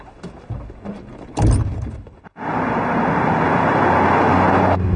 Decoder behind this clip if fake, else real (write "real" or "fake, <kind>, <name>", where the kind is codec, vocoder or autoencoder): real